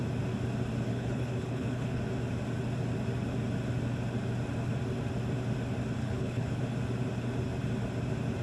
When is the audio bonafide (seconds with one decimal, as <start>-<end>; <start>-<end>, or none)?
0.0-0.9; 2.0-6.0; 6.6-8.4